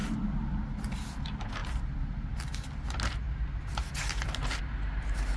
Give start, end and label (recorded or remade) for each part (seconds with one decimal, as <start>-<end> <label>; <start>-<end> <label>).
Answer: 0.0-5.4 recorded